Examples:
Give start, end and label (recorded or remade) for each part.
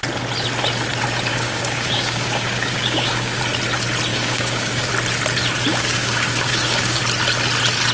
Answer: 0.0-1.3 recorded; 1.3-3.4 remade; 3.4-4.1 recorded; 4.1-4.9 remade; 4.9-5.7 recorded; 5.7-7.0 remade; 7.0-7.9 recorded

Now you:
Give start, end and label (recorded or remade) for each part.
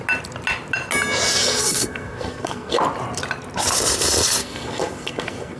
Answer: 0.0-1.4 recorded; 1.4-2.8 remade; 2.8-4.4 recorded; 4.4-5.6 remade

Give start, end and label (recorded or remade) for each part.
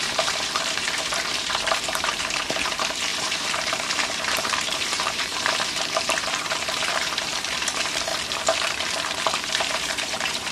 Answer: 0.0-8.1 remade; 8.1-9.5 recorded; 9.5-10.5 remade